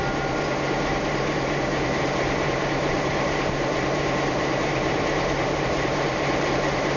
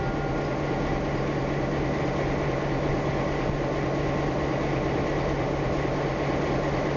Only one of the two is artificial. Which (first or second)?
first